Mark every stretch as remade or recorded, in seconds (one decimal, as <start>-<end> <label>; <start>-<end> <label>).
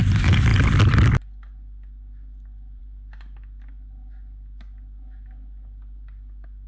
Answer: 0.0-6.7 recorded